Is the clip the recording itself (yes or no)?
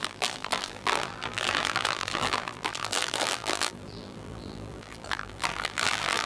no